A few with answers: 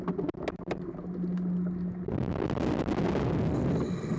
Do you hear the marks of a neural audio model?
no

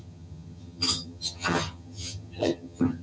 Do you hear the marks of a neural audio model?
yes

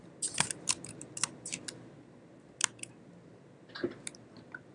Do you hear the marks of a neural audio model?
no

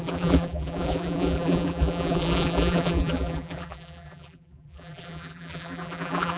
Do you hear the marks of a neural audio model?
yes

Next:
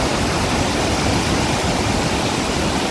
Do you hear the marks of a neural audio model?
no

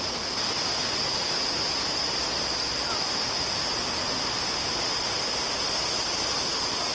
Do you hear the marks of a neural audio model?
no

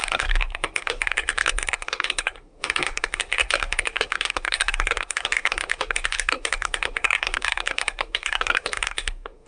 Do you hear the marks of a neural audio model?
yes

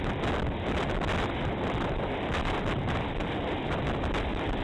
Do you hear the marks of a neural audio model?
yes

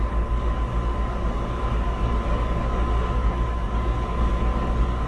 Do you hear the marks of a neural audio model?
yes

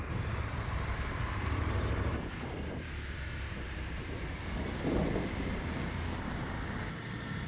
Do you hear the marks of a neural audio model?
yes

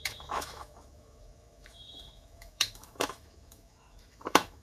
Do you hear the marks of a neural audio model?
yes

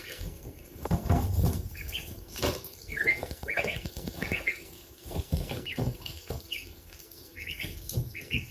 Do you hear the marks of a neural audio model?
yes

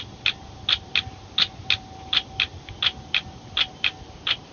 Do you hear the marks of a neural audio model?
no